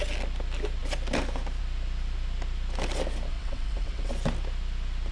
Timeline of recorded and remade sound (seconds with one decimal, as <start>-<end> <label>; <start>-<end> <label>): 0.0-3.3 recorded; 3.3-4.1 remade; 4.1-5.1 recorded